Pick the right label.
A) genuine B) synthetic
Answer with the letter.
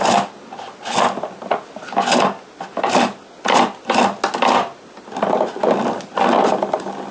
A